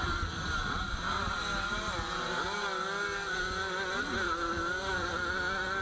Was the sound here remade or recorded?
recorded